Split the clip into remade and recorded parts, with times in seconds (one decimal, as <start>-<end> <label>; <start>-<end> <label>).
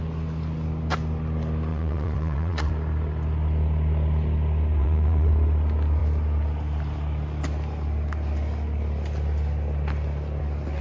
0.0-1.7 recorded; 1.7-2.7 remade; 2.7-4.8 recorded; 4.8-5.3 remade; 5.3-10.8 recorded